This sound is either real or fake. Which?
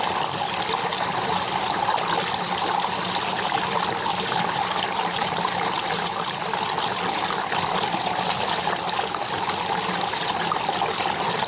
real